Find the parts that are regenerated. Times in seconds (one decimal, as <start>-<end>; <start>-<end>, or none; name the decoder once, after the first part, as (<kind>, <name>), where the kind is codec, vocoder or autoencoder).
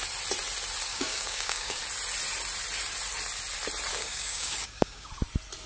0.9-1.8 (codec, DAC); 3.9-5.1